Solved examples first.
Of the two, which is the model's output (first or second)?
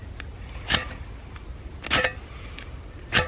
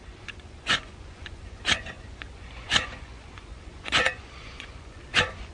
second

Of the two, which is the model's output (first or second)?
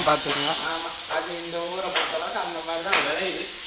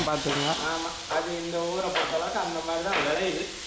first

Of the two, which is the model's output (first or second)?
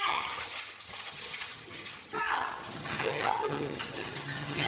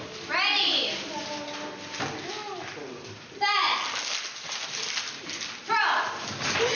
first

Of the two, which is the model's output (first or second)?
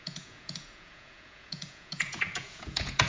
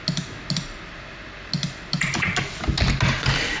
first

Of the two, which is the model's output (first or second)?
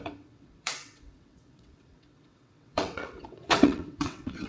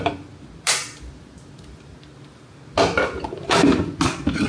first